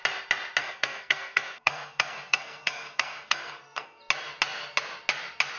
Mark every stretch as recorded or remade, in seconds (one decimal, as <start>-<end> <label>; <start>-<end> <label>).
0.0-0.6 recorded; 0.6-4.0 remade; 4.0-5.6 recorded